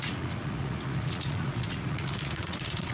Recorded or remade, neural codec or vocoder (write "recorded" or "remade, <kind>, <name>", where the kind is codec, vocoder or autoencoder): remade, vocoder, Vocos